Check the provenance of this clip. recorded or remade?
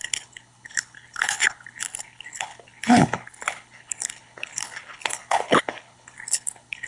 remade